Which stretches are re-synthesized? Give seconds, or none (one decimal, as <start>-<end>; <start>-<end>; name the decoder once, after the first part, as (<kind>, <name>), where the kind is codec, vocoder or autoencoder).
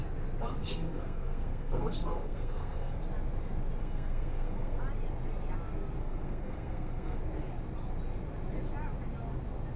0.6-3.0 (codec, SNAC); 3.8-4.8; 6.0-7.2